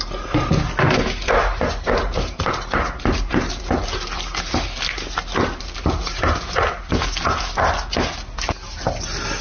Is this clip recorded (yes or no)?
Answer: yes